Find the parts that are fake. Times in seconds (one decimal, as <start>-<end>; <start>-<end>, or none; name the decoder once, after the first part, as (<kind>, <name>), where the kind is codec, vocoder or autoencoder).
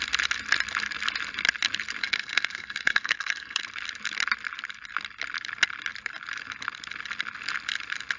2.0-3.6 (codec, SNAC)